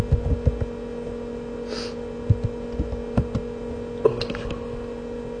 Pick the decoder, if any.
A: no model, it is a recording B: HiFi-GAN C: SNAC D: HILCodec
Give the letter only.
A